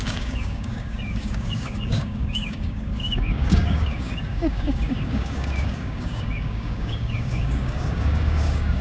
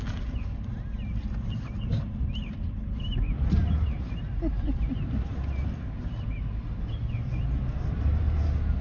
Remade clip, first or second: first